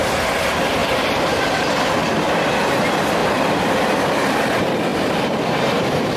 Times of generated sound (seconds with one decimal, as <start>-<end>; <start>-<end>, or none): 0.8-1.4; 3.2-4.3; 4.9-6.2